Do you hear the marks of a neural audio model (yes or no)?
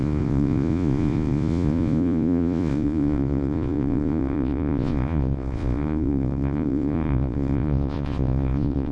yes